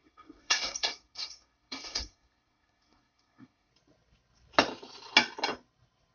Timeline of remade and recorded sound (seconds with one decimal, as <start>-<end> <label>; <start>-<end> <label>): 0.0-3.7 remade; 3.7-6.1 recorded